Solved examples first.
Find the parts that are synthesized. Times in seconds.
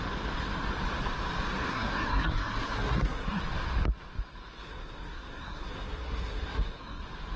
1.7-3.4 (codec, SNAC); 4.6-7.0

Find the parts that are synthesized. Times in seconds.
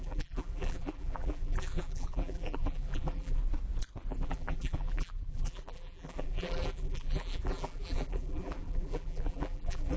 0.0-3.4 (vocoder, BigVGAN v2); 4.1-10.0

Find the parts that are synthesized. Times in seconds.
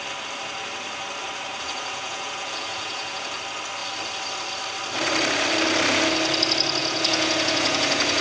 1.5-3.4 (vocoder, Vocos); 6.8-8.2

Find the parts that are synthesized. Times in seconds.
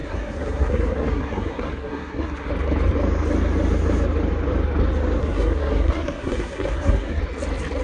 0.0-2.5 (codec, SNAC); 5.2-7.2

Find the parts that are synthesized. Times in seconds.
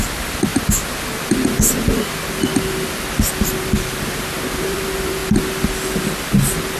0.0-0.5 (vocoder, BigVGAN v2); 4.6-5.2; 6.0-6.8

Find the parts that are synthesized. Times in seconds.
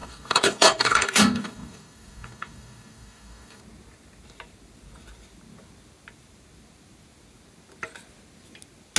0.0-3.6 (codec, DAC)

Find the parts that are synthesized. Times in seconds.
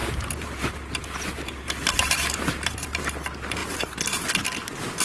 0.0-3.0 (vocoder, BigVGAN v2); 3.6-4.3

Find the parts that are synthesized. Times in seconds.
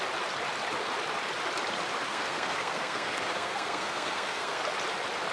2.1-4.6 (codec, SNAC)